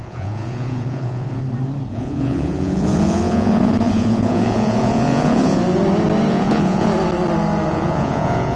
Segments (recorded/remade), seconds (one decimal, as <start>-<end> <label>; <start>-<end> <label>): 0.0-1.4 remade; 1.4-1.9 recorded; 1.9-5.6 remade; 5.6-6.3 recorded; 6.3-6.9 remade; 6.9-7.7 recorded; 7.7-8.6 remade